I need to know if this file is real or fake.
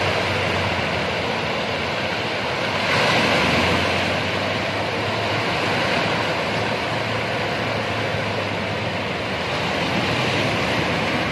real